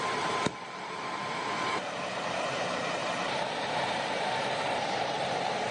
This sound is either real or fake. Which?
fake